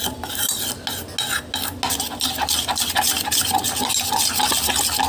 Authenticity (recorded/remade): recorded